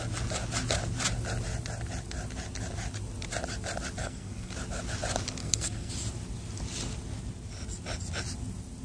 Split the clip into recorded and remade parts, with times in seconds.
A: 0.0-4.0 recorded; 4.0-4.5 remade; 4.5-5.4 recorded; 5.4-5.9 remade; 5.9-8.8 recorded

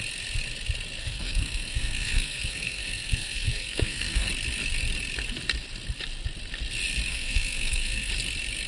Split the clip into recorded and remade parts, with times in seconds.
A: 0.0-1.0 recorded; 1.0-4.3 remade; 4.3-7.1 recorded; 7.1-8.1 remade; 8.1-8.7 recorded